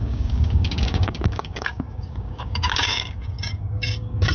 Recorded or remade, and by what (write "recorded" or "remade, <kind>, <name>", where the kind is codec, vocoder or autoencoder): remade, codec, DAC